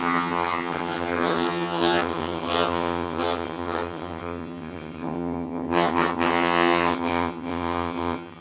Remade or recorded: remade